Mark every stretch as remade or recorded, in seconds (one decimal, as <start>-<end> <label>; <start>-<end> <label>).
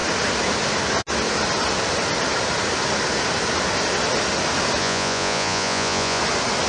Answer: 0.0-4.8 recorded; 4.8-6.2 remade; 6.2-6.7 recorded